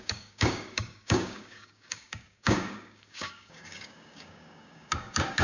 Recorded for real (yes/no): no